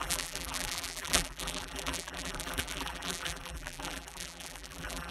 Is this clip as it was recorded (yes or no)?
no